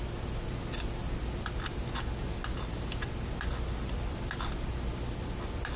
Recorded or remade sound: recorded